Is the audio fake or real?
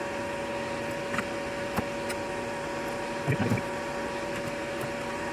real